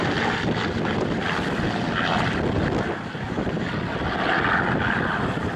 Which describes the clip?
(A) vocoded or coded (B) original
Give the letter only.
B